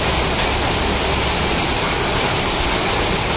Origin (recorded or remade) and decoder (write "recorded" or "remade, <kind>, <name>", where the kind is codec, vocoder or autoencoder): recorded